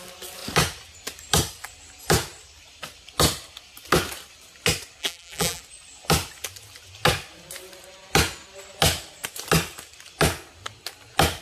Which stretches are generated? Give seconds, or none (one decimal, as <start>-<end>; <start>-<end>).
5.0-5.6